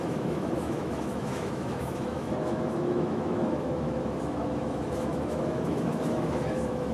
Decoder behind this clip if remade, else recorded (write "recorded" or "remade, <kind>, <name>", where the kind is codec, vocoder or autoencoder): remade, autoencoder, DAC-VAE